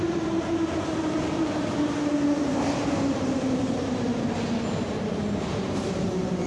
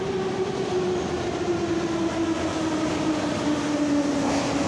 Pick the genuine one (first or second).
second